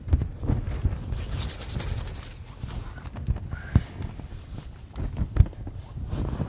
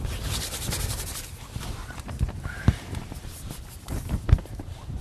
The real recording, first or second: first